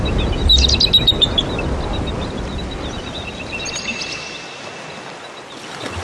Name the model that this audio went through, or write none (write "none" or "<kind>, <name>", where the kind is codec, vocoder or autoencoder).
none